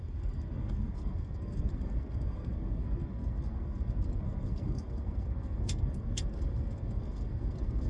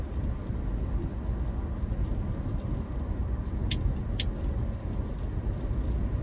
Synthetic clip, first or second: first